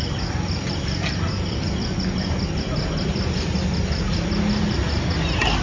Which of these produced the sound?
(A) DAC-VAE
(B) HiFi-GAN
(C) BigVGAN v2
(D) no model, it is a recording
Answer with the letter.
D